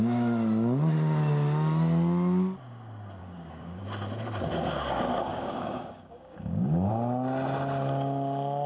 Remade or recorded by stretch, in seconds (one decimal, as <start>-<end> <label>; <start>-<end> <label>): 0.0-3.2 recorded; 3.2-3.8 remade; 3.8-5.3 recorded; 5.3-6.9 remade; 6.9-8.7 recorded